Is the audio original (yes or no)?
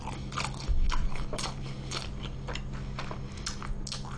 yes